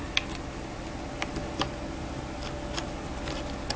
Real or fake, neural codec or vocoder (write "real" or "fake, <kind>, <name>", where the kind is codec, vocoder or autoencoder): real